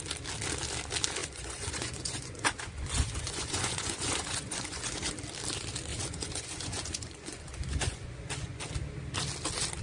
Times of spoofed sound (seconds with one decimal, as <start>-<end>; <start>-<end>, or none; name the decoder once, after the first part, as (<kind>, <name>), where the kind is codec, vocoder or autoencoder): 1.2-5.1 (vocoder, Vocos); 5.9-8.6